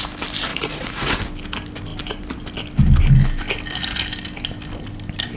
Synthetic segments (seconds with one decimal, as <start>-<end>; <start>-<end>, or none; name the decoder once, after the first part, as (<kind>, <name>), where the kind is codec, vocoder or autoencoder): 0.5-1.2 (vocoder, Vocos)